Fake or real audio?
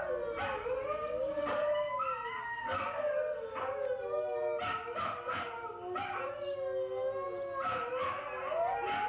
real